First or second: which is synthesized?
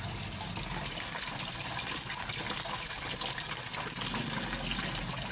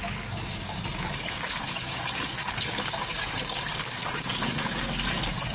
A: second